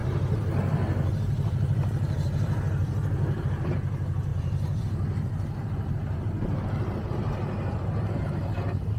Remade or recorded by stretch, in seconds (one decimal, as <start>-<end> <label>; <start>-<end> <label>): 0.0-3.5 remade; 3.5-4.3 recorded; 4.3-9.0 remade